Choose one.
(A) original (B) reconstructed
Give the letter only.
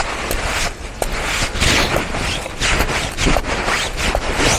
A